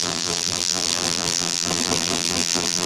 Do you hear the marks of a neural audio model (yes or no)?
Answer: yes